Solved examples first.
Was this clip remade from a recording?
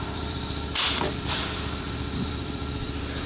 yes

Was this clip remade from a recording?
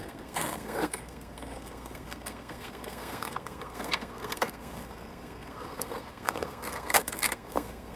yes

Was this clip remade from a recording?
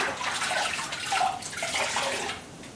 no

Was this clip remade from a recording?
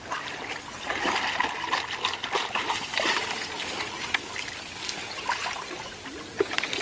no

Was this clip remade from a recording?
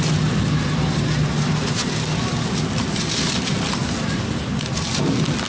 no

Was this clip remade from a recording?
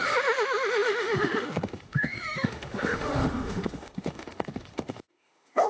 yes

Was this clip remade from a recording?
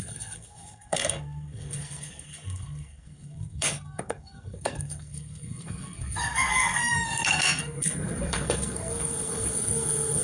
yes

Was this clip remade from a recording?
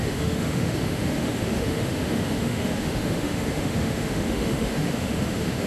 yes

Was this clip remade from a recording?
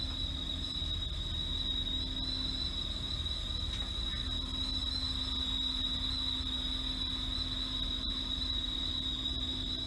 no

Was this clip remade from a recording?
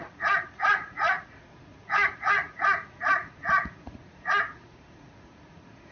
yes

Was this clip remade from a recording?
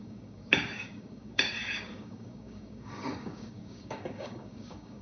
yes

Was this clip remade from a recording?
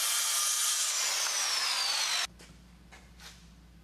no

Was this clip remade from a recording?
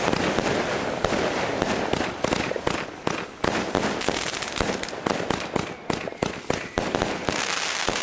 yes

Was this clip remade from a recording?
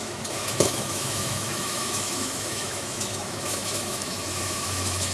yes